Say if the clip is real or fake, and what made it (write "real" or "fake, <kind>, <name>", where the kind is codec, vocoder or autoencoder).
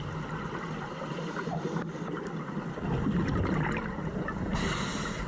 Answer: real